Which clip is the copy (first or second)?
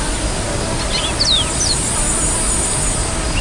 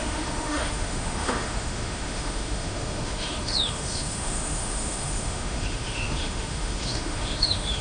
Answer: second